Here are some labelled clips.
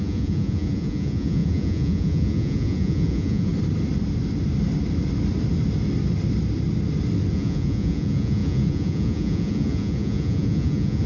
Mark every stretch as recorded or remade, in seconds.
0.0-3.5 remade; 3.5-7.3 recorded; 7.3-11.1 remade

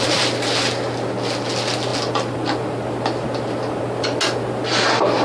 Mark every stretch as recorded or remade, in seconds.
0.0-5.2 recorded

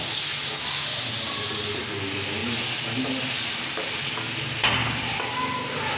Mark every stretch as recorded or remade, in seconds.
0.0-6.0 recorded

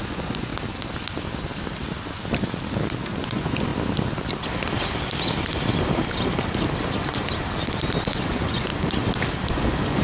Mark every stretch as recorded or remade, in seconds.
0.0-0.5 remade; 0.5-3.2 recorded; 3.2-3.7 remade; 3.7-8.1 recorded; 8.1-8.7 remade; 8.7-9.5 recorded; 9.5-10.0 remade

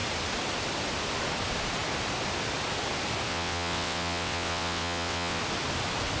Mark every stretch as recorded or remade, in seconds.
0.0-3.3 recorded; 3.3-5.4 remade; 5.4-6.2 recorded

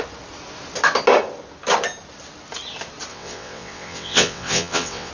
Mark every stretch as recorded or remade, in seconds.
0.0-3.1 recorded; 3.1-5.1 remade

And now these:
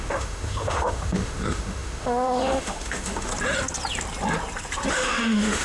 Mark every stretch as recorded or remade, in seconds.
0.0-3.3 remade; 3.3-4.9 recorded; 4.9-5.6 remade

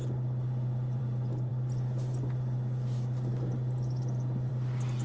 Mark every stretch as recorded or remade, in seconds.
0.0-5.0 recorded